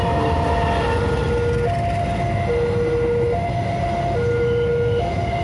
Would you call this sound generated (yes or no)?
no